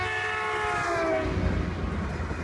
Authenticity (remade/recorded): recorded